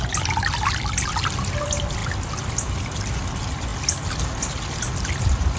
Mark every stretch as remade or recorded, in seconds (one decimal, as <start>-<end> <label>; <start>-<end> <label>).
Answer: 0.0-5.6 recorded